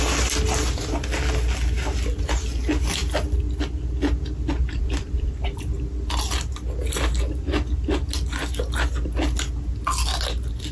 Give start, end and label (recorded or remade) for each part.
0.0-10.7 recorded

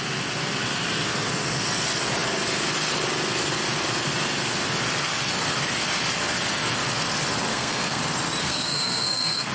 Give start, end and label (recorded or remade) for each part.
0.0-7.5 recorded; 7.5-8.0 remade; 8.0-8.4 recorded; 8.4-9.5 remade

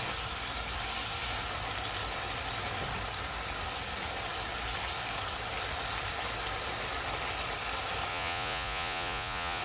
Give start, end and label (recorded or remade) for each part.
0.0-8.1 recorded; 8.1-9.6 remade

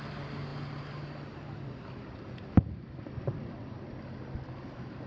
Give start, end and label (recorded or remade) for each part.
0.0-5.1 recorded

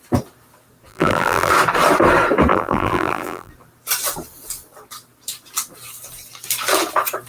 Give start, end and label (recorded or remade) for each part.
0.0-0.9 recorded; 0.9-1.5 remade; 1.5-2.5 recorded; 2.5-3.5 remade; 3.5-7.3 recorded

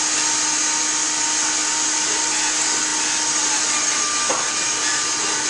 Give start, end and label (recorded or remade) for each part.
0.0-5.5 recorded

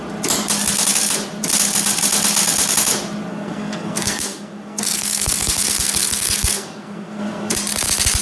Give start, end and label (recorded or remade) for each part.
0.0-3.3 recorded; 3.3-7.5 remade; 7.5-8.2 recorded